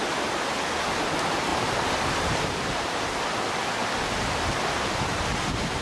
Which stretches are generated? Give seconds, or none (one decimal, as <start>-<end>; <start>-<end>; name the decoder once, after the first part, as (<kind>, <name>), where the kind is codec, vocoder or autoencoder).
1.5-3.4 (vocoder, BigVGAN v2)